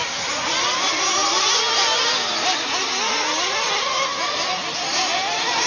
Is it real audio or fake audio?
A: real